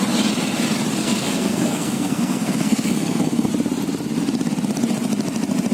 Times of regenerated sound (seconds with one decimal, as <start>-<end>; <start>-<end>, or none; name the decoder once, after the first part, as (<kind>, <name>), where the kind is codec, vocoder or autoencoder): 1.0-3.5 (codec, SNAC)